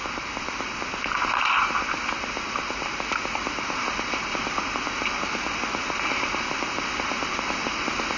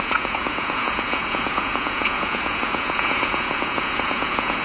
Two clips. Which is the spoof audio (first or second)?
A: second